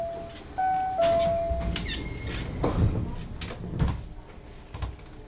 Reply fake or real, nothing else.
real